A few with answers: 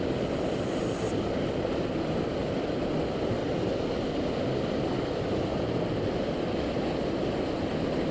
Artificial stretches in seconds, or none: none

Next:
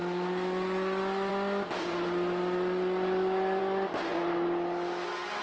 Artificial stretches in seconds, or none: none

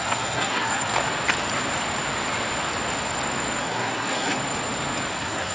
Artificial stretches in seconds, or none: 0.0-0.9 (codec, SNAC); 3.6-4.4; 5.1-5.5

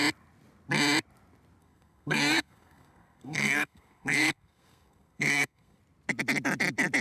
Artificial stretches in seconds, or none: 1.6-5.8 (codec, SNAC)

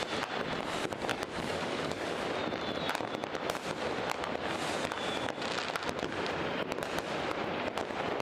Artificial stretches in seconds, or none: 1.1-2.2 (codec, DAC)